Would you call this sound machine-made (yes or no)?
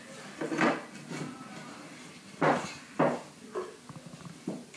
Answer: no